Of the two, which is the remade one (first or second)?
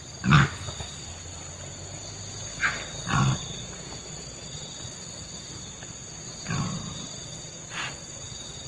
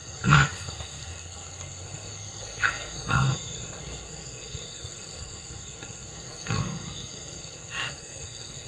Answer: second